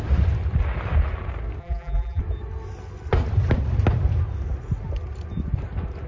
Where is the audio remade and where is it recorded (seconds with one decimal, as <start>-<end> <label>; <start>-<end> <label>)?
0.0-1.6 recorded; 1.6-2.2 remade; 2.2-6.1 recorded